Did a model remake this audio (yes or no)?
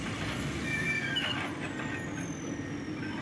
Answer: no